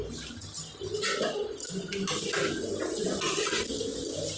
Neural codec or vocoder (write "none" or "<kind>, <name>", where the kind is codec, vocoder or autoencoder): none